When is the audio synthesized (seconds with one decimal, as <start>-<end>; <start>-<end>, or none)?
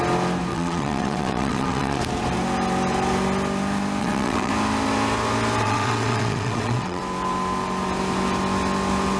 0.5-2.0; 4.0-4.5; 5.6-7.0